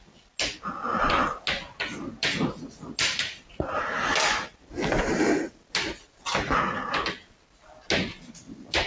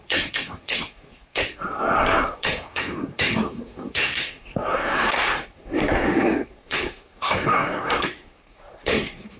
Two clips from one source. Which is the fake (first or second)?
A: second